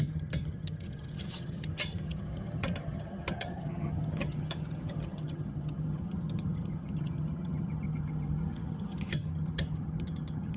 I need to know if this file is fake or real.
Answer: fake